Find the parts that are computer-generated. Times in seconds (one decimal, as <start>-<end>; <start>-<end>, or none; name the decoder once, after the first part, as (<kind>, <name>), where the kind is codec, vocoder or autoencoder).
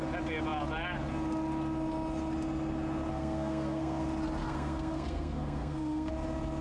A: 3.1-4.0 (codec, SNAC); 4.4-6.1